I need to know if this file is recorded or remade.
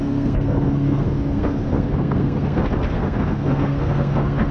remade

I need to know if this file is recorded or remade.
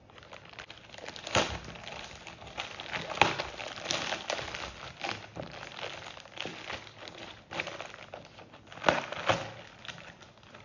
recorded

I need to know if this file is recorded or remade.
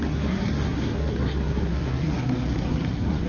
remade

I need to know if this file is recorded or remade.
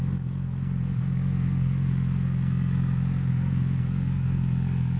remade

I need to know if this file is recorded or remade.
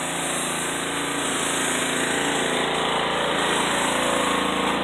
recorded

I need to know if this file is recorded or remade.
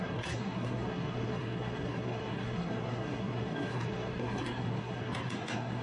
remade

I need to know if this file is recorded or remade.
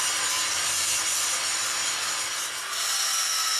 recorded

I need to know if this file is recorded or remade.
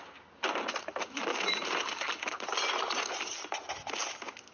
recorded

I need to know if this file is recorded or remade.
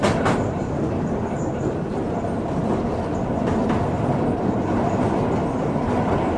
recorded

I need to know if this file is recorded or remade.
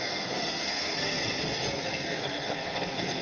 remade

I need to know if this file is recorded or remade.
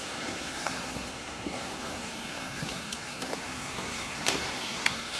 remade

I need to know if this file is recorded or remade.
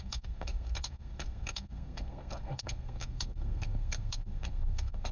remade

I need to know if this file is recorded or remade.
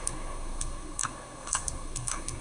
remade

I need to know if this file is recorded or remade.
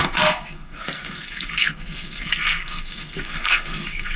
remade